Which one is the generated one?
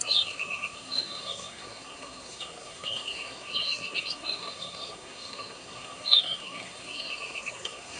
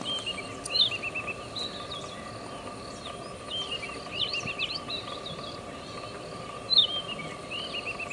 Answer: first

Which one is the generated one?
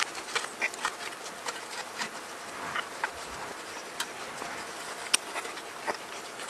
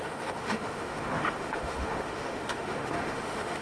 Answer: second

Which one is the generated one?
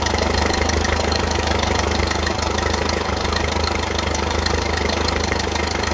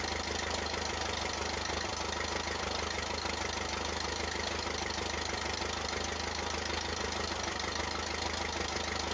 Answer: first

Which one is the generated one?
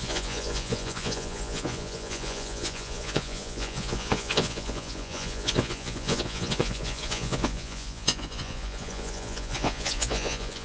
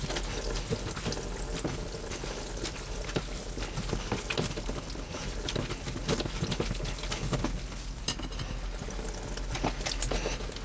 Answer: first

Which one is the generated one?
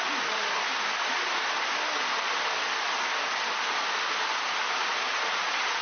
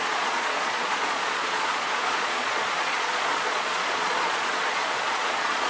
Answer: second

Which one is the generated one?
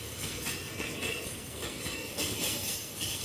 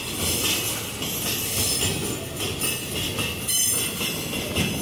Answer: first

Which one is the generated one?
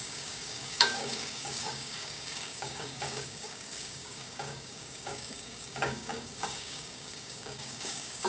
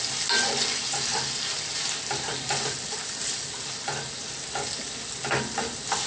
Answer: first